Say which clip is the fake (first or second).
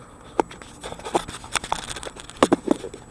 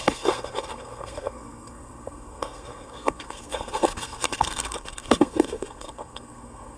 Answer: second